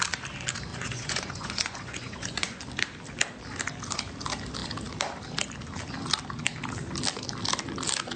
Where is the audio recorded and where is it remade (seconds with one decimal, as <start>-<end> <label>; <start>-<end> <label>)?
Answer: 0.0-0.7 recorded; 0.7-2.6 remade; 2.6-8.2 recorded

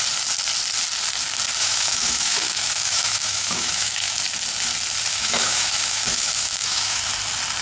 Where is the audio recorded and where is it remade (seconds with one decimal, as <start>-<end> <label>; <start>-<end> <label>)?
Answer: 0.0-1.6 recorded; 1.6-4.2 remade; 4.2-5.1 recorded; 5.1-7.0 remade; 7.0-7.6 recorded